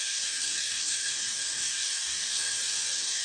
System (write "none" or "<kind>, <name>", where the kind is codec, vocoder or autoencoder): codec, DAC